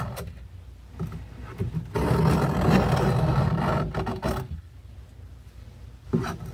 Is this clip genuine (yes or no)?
yes